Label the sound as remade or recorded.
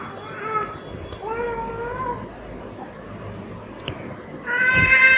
recorded